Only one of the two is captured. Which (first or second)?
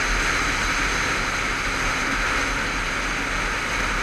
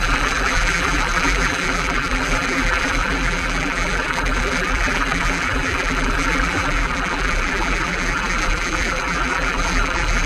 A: first